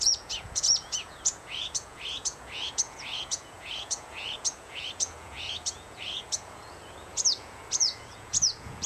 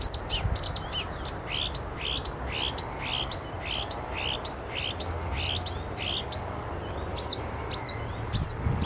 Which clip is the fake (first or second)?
first